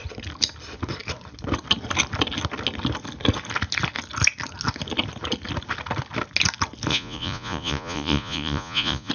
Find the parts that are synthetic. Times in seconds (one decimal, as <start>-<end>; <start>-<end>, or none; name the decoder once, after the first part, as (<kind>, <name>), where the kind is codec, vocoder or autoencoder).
6.9-9.1 (vocoder, Vocos)